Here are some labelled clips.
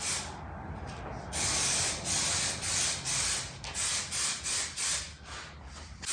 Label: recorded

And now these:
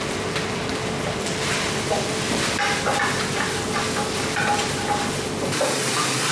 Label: recorded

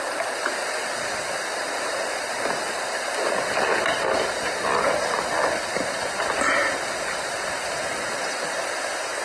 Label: recorded